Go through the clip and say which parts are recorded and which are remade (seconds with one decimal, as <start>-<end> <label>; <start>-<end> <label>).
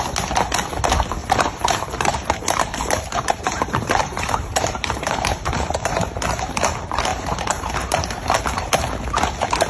0.0-1.2 recorded; 1.2-6.2 remade; 6.2-7.1 recorded; 7.1-8.4 remade; 8.4-9.7 recorded